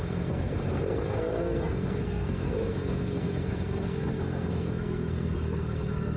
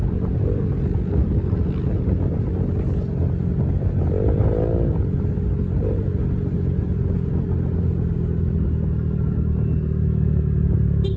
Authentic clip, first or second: second